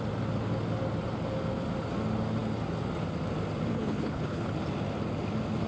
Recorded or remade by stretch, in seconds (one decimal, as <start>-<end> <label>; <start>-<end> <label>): 0.0-3.7 recorded; 3.7-4.5 remade; 4.5-5.7 recorded